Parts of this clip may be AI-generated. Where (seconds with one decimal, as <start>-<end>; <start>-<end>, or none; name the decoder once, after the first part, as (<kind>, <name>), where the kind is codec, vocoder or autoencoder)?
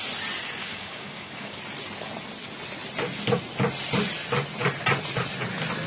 0.6-1.6 (codec, DAC)